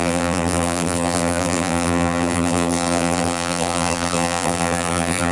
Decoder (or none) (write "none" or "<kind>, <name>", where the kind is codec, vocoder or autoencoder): vocoder, BigVGAN v2